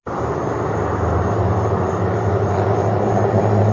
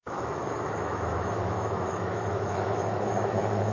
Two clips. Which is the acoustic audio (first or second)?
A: first